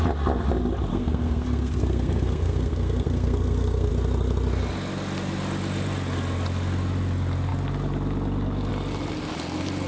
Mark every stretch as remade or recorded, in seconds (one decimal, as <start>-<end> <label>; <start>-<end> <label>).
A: 0.0-0.9 recorded; 0.9-3.9 remade; 3.9-9.9 recorded